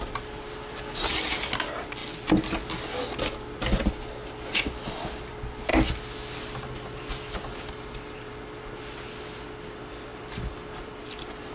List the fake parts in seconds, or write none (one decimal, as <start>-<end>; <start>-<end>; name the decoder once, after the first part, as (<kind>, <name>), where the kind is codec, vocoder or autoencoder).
none